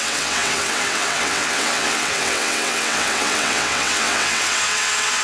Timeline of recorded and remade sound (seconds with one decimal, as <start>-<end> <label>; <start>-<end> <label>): 0.0-5.2 remade